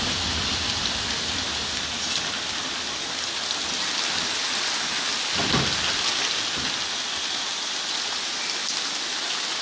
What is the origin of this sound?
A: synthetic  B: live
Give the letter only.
B